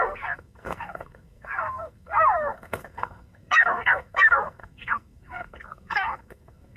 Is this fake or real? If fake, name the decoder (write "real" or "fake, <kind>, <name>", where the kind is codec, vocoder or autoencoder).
fake, codec, SNAC